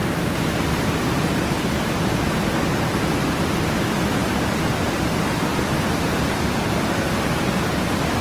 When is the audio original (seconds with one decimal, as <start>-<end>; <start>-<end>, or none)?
0.0-5.5; 7.6-8.2